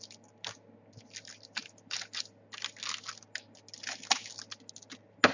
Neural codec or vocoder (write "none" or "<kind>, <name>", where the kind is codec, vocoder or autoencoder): none